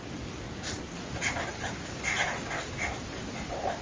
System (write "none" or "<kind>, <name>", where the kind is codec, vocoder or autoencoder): none